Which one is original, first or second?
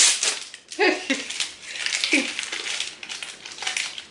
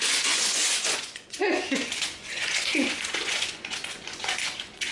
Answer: first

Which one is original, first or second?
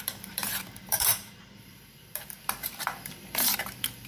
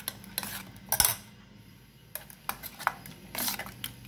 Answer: second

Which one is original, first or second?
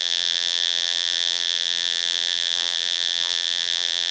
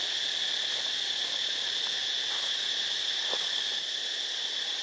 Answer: second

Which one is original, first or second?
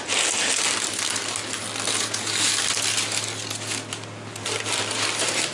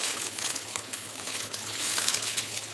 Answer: first